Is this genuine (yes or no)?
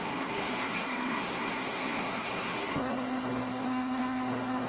no